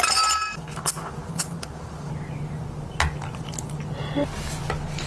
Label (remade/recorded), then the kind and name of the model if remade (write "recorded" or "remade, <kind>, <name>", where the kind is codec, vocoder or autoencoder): recorded